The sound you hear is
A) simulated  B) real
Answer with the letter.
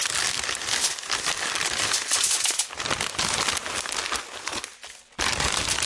B